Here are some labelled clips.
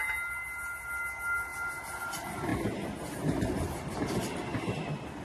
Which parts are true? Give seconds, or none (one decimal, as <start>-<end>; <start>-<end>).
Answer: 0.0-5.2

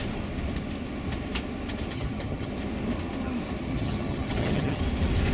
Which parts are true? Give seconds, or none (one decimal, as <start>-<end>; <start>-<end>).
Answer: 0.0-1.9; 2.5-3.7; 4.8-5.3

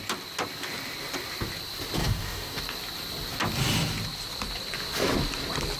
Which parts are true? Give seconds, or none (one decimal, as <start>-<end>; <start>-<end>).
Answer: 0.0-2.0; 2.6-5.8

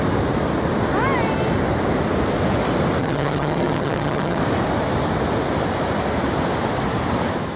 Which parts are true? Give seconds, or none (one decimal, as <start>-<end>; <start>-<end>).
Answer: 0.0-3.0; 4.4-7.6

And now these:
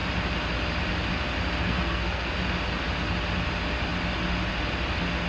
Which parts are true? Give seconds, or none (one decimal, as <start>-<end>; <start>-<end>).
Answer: 0.0-1.6; 2.3-5.3